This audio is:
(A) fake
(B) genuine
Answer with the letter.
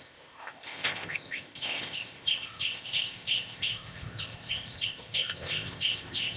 A